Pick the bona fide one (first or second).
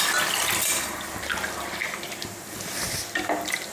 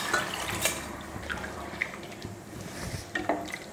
first